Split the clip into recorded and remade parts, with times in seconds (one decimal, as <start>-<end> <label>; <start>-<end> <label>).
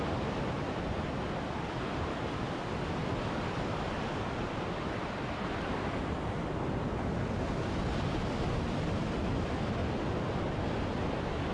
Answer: 0.0-11.5 recorded